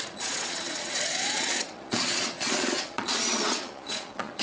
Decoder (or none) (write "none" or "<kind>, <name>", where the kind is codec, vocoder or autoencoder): vocoder, Vocos